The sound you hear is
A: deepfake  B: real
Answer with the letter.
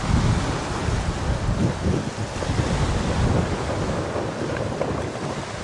B